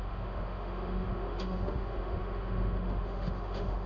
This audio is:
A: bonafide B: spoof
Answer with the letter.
B